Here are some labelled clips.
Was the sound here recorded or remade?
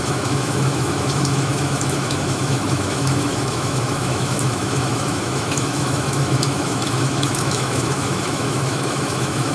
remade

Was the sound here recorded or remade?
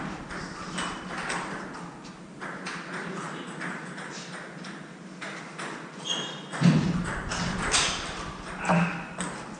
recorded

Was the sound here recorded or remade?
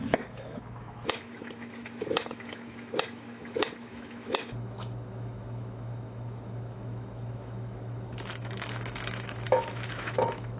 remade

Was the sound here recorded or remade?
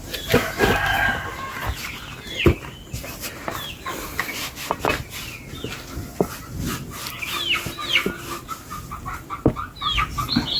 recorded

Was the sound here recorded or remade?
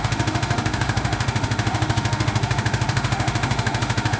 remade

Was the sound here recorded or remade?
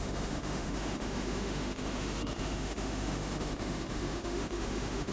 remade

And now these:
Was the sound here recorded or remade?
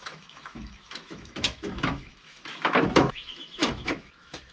remade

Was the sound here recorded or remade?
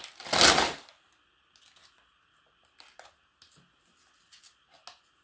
recorded